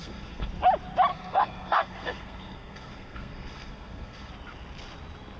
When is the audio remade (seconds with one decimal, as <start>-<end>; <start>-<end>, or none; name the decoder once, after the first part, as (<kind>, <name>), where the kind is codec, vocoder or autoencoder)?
0.0-0.5 (codec, SNAC); 1.1-4.3